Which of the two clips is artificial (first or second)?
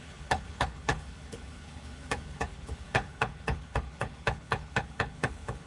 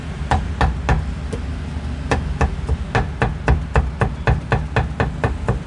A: first